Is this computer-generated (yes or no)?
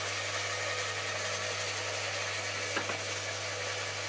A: no